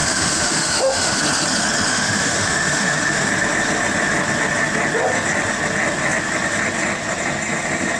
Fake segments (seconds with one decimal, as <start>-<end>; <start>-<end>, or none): 0.0-1.2; 1.9-3.3